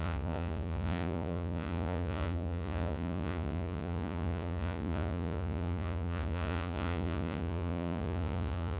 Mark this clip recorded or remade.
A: remade